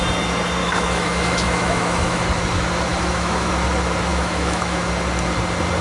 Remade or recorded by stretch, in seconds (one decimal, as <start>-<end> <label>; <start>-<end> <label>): 0.0-0.6 recorded; 0.6-2.2 remade; 2.2-2.9 recorded; 2.9-3.5 remade; 3.5-4.1 recorded; 4.1-4.9 remade; 4.9-5.8 recorded

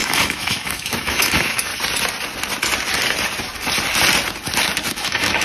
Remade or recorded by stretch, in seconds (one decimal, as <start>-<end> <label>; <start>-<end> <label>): 0.0-1.7 remade; 1.7-4.9 recorded; 4.9-5.4 remade